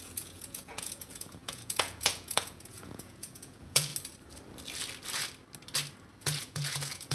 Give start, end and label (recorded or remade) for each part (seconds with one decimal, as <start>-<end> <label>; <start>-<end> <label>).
0.0-3.9 remade; 3.9-6.2 recorded; 6.2-7.1 remade